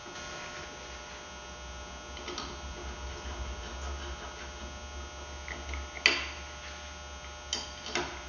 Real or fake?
real